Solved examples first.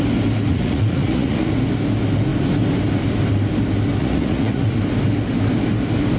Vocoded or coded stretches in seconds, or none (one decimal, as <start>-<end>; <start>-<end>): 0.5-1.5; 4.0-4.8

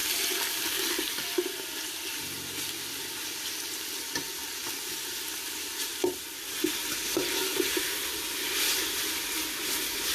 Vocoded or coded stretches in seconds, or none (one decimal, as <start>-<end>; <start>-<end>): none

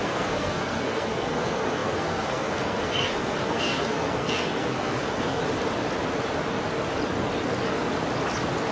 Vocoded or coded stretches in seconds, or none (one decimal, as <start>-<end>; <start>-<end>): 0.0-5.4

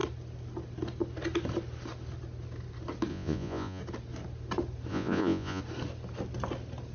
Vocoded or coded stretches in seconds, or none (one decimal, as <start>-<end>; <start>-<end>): 3.1-3.8; 4.9-5.6